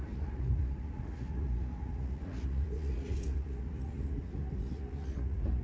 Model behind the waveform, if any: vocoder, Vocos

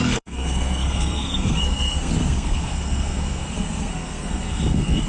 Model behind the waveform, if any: codec, SNAC